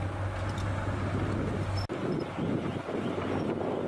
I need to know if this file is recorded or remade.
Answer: recorded